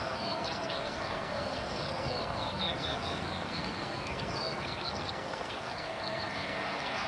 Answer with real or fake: fake